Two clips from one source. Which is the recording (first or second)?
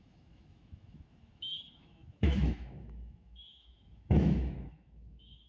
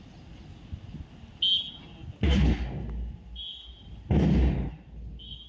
second